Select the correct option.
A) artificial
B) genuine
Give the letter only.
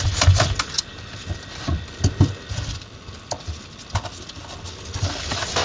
B